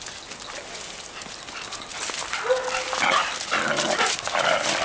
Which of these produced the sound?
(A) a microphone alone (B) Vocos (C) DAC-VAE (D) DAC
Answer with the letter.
A